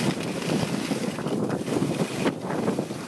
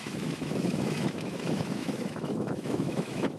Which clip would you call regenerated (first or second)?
second